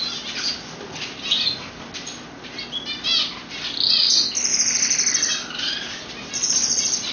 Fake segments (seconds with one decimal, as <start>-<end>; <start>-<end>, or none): none